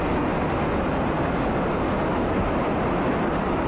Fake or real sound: real